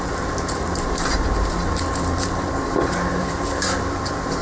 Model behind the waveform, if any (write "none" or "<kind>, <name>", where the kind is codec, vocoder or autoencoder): vocoder, BigVGAN v2